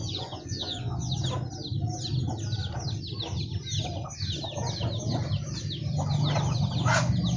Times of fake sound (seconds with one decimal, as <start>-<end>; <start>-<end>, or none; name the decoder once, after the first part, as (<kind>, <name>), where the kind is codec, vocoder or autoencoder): 0.0-1.1 (vocoder, Vocos)